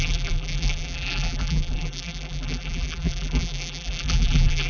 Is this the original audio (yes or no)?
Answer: no